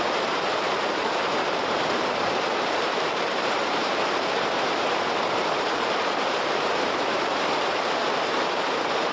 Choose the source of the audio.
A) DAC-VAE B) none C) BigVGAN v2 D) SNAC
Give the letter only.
C